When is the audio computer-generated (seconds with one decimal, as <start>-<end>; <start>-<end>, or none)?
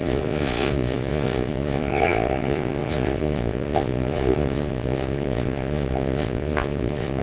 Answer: 0.0-7.2